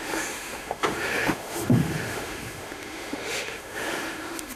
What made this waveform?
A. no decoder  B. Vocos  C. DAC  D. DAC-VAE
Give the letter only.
D